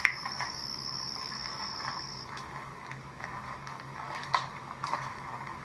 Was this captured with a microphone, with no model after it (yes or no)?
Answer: no